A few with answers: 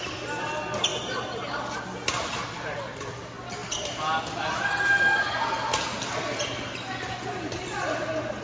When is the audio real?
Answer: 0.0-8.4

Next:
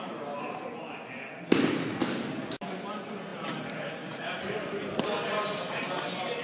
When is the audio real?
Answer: 0.0-6.4

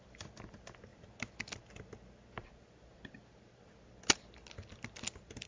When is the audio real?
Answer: 0.0-5.5